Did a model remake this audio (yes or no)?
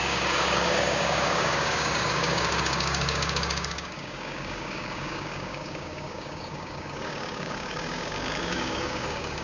yes